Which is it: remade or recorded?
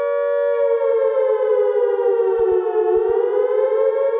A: recorded